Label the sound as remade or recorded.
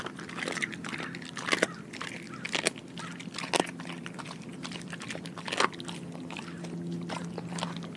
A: recorded